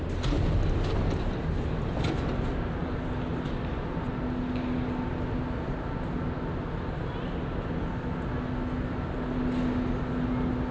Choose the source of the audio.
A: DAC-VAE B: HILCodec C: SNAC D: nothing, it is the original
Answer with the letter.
D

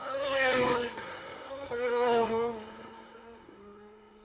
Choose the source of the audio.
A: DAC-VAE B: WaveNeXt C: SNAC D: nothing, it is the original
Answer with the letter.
C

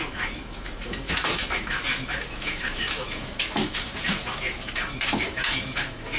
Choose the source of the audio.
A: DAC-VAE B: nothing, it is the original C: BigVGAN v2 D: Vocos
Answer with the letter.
A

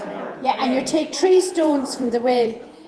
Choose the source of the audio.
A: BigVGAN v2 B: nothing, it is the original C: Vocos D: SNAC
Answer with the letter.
C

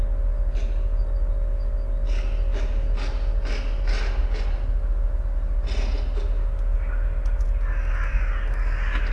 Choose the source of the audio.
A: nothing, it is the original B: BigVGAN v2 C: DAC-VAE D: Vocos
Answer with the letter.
A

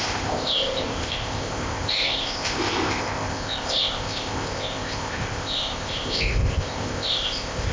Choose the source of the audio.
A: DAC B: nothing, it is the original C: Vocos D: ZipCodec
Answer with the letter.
D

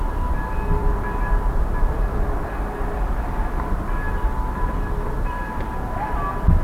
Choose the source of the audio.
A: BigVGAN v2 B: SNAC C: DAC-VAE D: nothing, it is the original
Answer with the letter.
A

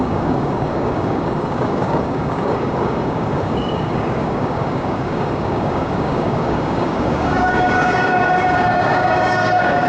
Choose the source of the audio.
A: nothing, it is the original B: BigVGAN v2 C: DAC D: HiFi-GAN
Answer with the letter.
C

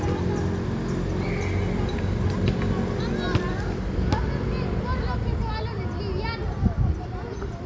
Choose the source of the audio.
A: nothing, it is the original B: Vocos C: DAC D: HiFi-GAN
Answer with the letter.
A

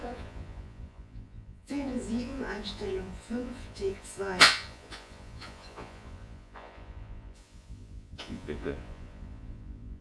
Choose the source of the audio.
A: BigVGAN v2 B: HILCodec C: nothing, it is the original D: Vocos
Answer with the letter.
D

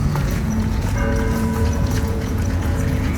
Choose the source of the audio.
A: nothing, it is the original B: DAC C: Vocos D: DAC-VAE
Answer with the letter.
C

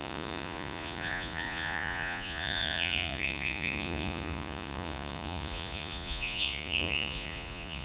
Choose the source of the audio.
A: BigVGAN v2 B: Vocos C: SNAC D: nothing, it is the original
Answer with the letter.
B